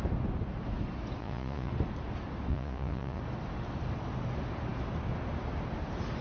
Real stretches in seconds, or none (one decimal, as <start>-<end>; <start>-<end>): 0.0-1.2; 1.7-2.5; 3.2-6.2